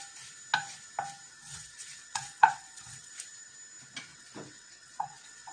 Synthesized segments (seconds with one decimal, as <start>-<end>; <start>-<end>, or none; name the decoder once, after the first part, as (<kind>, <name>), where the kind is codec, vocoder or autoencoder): 1.4-3.1 (vocoder, WaveNeXt); 4.1-5.5